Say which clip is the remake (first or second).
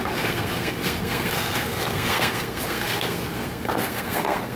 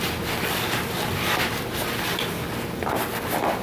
first